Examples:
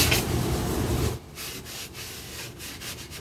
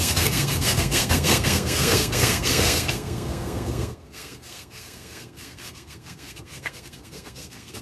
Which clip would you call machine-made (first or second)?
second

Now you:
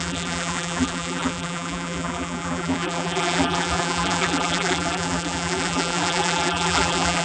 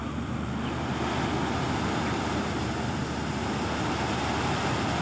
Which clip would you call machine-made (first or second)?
first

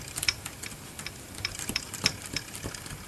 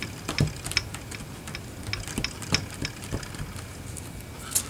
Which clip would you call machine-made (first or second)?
first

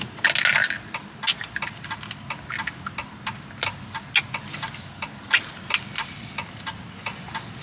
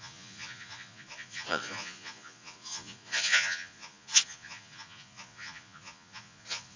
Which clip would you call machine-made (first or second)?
second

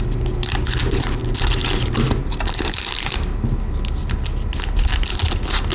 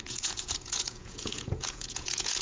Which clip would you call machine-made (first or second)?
second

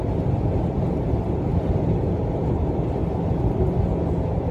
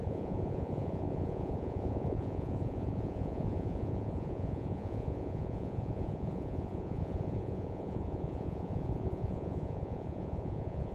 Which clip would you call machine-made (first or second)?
second